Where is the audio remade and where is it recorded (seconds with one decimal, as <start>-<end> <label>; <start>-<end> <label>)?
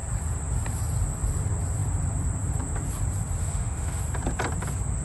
0.0-3.4 recorded; 3.4-4.0 remade; 4.0-5.0 recorded